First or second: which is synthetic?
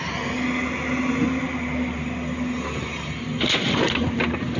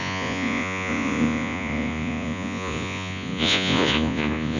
second